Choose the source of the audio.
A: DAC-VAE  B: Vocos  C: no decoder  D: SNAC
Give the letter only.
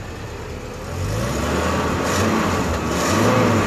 C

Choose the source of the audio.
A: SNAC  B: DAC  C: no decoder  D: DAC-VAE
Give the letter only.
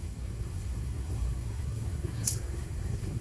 A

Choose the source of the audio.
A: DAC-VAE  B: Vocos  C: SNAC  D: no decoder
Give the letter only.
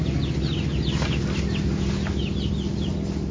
D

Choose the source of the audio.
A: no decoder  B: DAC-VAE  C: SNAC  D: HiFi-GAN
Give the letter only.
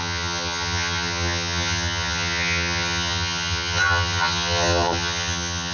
D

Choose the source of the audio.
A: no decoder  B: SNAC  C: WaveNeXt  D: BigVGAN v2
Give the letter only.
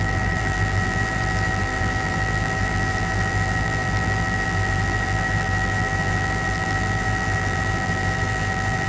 D